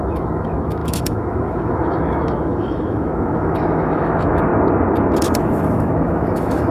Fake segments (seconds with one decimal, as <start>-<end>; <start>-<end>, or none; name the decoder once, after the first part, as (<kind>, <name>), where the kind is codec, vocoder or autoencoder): 0.0-4.5 (autoencoder, DAC-VAE); 5.4-6.7